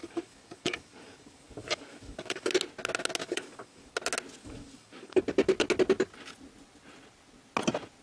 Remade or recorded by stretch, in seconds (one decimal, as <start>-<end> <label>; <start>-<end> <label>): 0.0-2.5 remade; 2.5-3.2 recorded; 3.2-3.9 remade; 3.9-4.4 recorded; 4.4-5.2 remade; 5.2-8.0 recorded